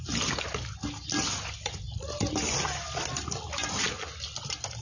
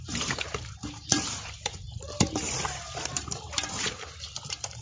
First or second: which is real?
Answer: first